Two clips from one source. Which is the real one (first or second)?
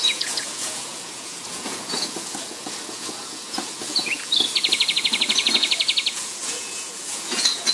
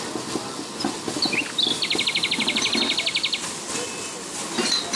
second